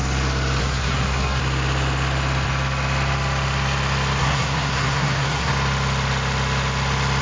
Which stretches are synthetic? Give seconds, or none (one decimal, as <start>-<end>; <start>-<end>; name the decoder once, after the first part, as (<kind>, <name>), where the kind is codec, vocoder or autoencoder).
0.6-1.4 (codec, SNAC); 4.2-5.5